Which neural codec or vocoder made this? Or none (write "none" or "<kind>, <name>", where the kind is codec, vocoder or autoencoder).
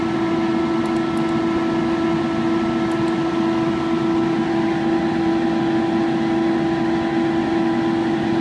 none